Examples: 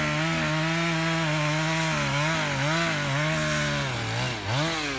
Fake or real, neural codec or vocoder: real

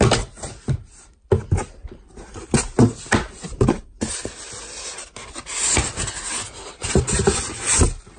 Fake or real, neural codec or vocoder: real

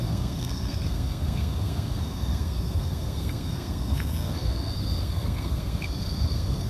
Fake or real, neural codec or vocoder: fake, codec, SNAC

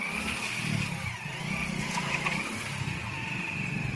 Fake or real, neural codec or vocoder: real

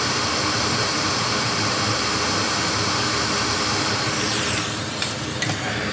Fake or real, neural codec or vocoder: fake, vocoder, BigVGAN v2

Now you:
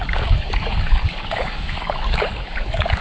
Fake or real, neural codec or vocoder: fake, codec, DAC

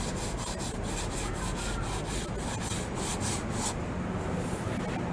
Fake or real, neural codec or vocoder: real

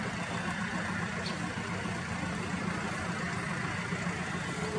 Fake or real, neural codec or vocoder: real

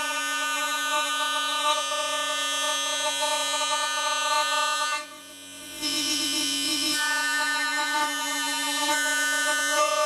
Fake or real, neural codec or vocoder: fake, vocoder, Vocos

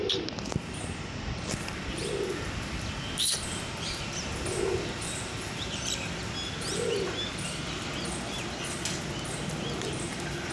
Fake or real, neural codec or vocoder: fake, vocoder, BigVGAN v2